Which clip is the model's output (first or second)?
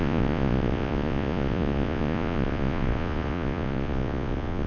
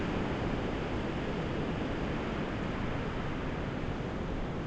first